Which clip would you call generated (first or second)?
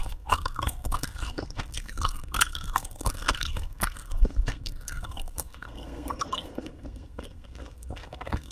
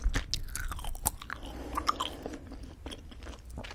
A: first